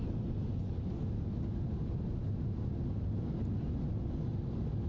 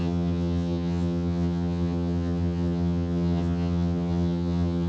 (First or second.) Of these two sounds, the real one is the first